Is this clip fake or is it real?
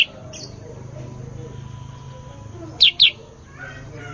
real